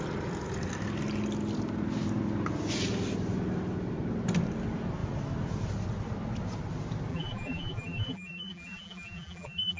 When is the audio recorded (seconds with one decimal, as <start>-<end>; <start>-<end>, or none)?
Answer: 0.0-7.1